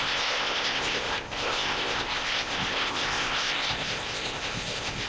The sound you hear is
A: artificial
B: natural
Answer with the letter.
A